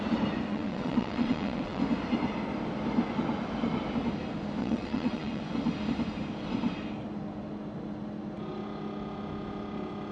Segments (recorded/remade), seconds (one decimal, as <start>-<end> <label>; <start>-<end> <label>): 0.0-0.5 recorded; 0.5-1.8 remade; 1.8-4.6 recorded; 4.6-5.4 remade; 5.4-10.1 recorded